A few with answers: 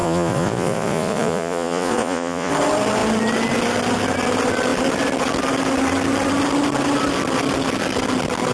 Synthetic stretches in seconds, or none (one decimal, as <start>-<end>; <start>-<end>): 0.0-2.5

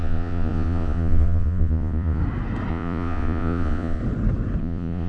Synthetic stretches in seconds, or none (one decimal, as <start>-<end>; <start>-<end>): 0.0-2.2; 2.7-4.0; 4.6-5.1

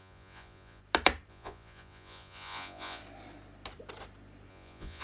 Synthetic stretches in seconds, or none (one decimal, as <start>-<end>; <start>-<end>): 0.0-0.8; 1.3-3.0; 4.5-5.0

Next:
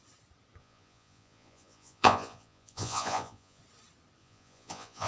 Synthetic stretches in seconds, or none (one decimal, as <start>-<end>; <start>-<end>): 0.6-3.6; 4.2-5.1

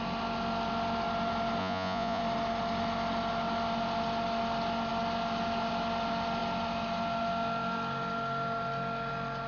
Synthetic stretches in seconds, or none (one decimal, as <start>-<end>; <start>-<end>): 1.6-2.2